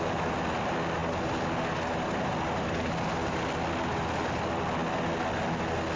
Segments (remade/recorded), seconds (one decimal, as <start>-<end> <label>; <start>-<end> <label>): 0.0-6.0 recorded